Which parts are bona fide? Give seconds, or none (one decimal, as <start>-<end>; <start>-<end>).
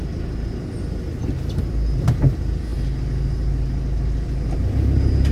0.0-5.3